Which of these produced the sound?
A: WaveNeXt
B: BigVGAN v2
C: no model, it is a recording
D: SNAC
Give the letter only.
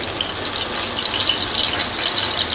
C